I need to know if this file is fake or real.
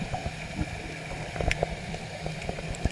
real